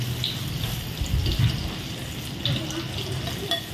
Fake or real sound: real